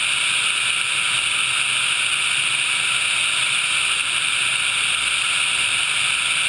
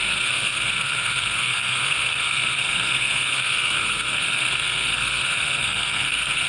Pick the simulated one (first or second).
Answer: second